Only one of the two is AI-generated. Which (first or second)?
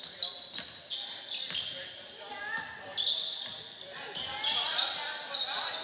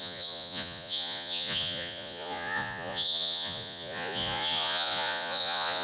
second